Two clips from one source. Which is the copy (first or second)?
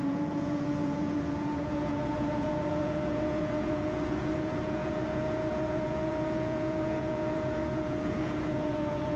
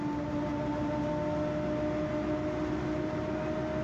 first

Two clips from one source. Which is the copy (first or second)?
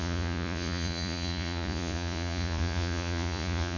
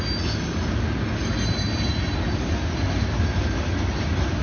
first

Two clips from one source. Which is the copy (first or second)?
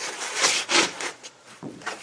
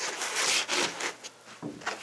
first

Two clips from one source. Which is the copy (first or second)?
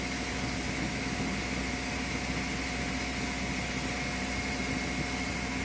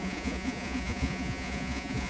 second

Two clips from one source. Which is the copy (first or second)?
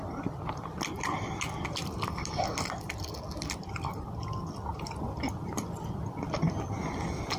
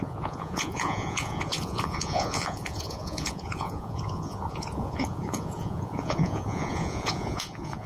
second